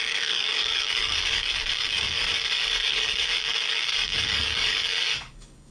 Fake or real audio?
fake